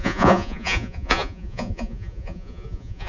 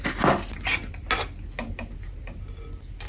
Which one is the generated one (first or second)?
first